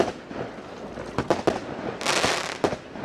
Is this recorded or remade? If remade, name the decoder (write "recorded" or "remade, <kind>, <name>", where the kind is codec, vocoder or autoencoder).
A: recorded